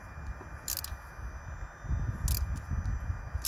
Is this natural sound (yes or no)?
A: yes